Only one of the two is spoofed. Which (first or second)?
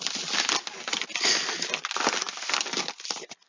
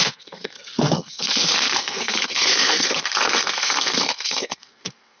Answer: second